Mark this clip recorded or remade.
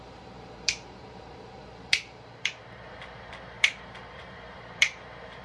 remade